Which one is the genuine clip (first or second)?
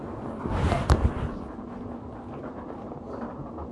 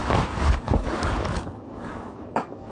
first